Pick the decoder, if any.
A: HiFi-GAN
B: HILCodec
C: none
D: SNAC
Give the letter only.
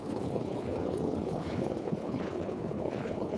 B